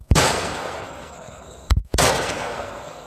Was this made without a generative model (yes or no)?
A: no